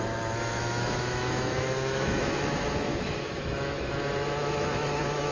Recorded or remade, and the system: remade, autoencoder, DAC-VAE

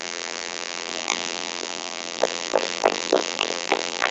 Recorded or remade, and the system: remade, vocoder, BigVGAN v2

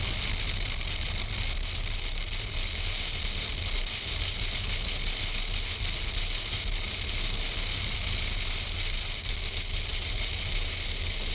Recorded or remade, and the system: recorded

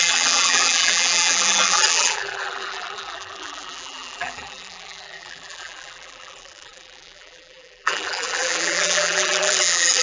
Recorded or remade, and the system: remade, vocoder, BigVGAN v2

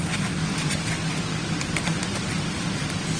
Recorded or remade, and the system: recorded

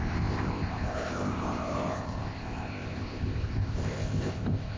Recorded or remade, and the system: remade, codec, ZipCodec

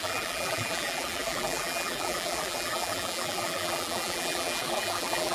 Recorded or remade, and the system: remade, vocoder, BigVGAN v2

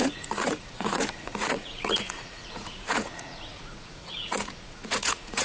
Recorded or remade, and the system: remade, vocoder, Vocos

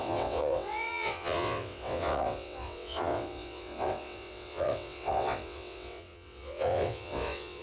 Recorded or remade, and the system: remade, vocoder, WaveNeXt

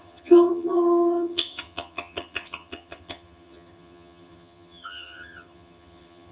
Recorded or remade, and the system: remade, vocoder, HiFi-GAN